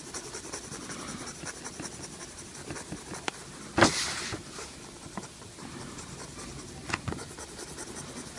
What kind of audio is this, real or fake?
real